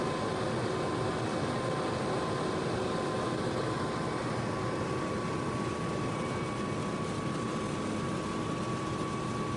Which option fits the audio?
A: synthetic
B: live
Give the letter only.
B